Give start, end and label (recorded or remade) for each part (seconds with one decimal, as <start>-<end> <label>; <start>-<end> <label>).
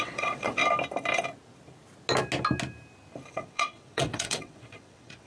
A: 0.0-0.6 remade; 0.6-3.3 recorded; 3.3-5.3 remade